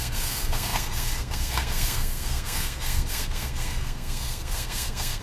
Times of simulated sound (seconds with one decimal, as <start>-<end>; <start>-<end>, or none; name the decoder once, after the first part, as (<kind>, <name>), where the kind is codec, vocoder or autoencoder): 0.0-5.2 (codec, SNAC)